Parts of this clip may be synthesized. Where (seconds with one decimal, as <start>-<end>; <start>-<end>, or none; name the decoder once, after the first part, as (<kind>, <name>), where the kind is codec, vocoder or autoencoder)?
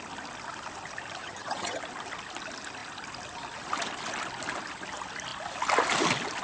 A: 1.2-1.8 (vocoder, HiFi-GAN)